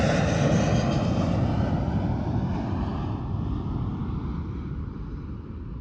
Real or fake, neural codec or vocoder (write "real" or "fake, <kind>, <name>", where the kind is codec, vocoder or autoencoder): real